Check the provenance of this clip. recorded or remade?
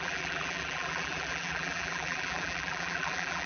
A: remade